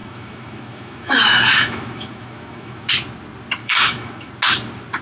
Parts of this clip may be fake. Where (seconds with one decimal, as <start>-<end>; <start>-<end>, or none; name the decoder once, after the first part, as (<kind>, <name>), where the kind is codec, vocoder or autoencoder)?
0.0-2.9 (autoencoder, DAC-VAE); 3.6-4.3

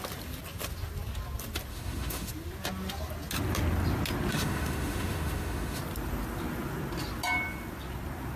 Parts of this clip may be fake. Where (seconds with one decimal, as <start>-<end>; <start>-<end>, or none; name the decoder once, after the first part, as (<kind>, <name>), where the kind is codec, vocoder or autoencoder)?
1.7-2.3 (autoencoder, DAC-VAE); 4.3-5.8

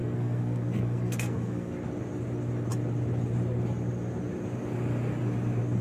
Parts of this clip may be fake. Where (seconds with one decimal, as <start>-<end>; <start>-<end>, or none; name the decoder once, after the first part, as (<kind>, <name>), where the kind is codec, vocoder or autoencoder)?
0.0-1.7 (codec, SNAC)

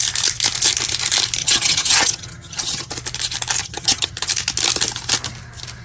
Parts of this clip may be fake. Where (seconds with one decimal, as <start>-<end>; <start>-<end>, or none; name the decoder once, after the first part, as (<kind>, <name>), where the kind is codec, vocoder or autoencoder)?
1.4-2.9 (vocoder, HiFi-GAN); 3.6-4.3